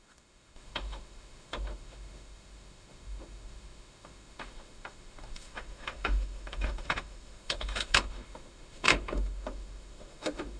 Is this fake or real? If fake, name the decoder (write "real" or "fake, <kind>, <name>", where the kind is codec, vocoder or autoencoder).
fake, autoencoder, DAC-VAE